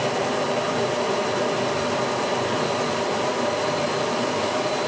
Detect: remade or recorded remade